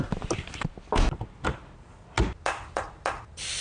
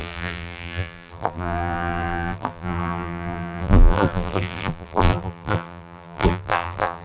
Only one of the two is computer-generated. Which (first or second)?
second